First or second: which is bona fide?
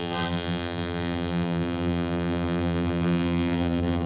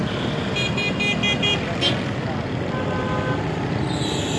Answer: second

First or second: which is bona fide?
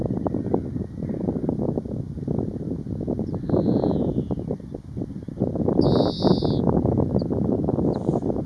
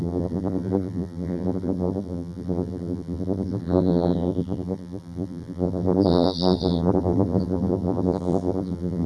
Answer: first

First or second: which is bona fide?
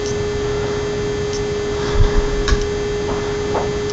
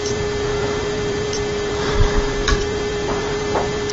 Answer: first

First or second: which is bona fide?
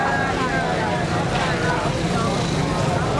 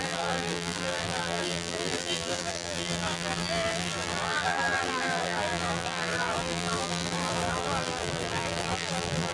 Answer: first